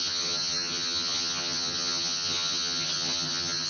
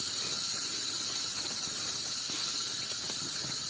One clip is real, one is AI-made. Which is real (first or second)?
second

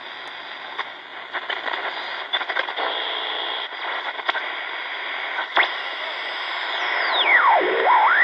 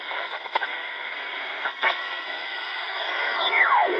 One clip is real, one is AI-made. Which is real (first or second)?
first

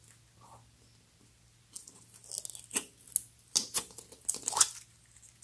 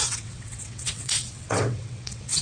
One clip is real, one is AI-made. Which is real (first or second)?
first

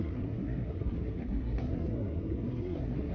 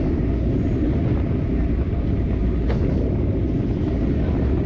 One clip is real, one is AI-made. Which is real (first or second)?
second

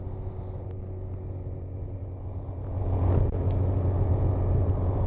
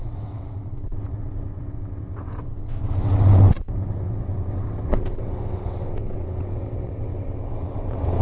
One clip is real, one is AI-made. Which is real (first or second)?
first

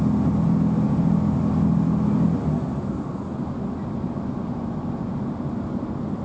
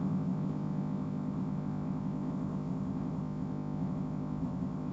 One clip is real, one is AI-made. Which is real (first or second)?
first